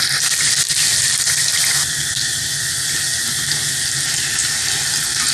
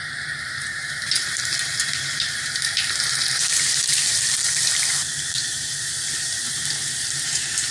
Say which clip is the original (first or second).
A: first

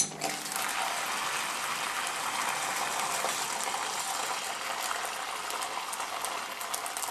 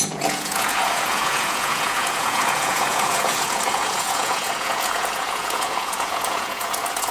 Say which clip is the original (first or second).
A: first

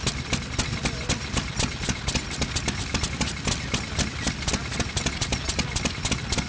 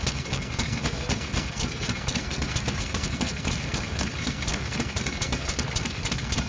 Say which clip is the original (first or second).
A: first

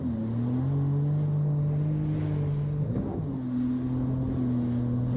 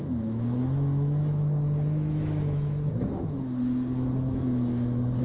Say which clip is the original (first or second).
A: first